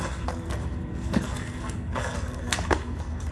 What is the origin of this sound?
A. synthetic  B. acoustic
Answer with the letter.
A